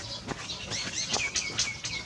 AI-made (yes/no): no